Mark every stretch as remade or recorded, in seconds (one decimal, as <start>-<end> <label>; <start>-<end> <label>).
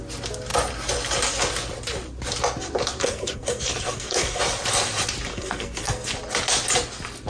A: 0.0-3.0 recorded; 3.0-4.4 remade; 4.4-5.3 recorded; 5.3-6.1 remade; 6.1-7.3 recorded